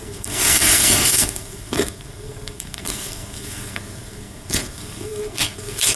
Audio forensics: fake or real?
fake